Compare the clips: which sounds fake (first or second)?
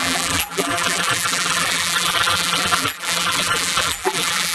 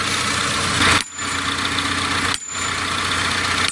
first